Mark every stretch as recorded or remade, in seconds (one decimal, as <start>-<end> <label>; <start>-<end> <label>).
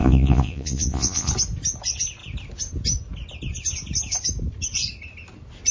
0.0-1.3 remade; 1.3-5.7 recorded